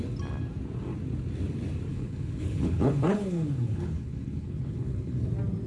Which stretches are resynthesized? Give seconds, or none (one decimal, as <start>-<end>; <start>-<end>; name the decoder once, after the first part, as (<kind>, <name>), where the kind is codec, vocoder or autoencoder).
1.9-5.3 (codec, HILCodec)